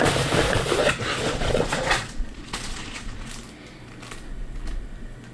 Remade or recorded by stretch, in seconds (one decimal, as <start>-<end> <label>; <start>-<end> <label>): 0.0-0.8 recorded; 0.8-3.3 remade; 3.3-5.3 recorded

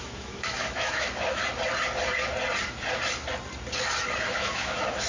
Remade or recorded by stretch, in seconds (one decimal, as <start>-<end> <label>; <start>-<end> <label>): 0.0-1.4 remade; 1.4-4.3 recorded; 4.3-5.1 remade

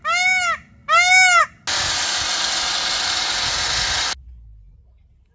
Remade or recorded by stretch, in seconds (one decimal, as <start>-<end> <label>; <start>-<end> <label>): 0.0-5.3 recorded

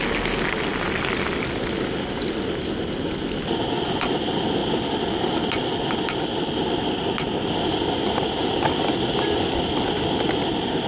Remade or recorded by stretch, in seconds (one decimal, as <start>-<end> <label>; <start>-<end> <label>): 0.0-10.9 recorded

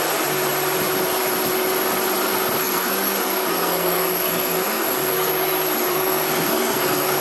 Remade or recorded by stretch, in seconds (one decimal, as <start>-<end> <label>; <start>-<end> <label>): 0.0-2.6 recorded; 2.6-5.3 remade; 5.3-5.9 recorded; 5.9-7.2 remade

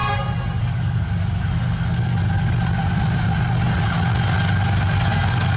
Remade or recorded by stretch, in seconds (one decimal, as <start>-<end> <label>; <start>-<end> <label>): 0.0-0.6 recorded; 0.6-2.1 remade; 2.1-5.0 recorded; 5.0-5.6 remade

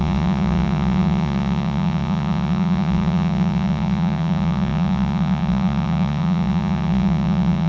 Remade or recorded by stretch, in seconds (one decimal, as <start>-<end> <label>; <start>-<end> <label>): 0.0-7.7 remade